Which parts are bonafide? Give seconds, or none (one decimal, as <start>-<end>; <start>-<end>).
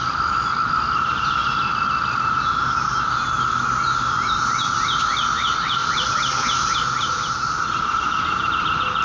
0.0-5.8; 7.3-9.0